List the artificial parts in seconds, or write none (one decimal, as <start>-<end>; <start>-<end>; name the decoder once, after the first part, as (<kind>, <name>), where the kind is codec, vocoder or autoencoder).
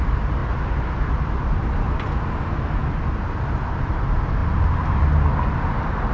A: none